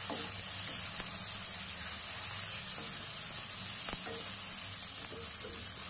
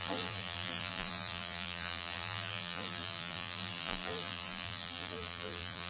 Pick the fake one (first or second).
second